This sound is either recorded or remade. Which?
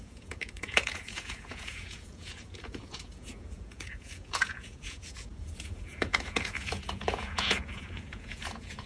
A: remade